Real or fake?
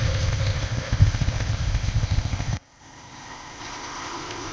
fake